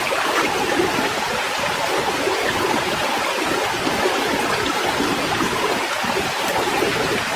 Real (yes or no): no